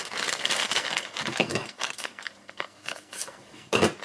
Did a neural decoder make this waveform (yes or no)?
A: yes